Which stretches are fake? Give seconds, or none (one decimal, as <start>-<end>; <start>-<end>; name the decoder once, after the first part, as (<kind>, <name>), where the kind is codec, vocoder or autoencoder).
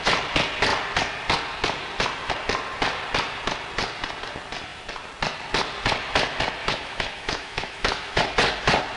6.6-8.2 (autoencoder, DAC-VAE)